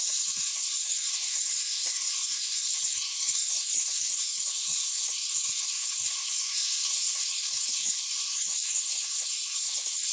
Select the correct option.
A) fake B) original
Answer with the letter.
A